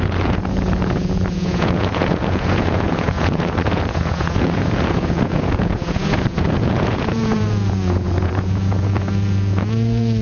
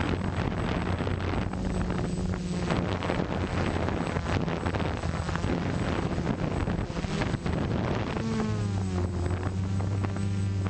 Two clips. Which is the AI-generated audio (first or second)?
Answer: first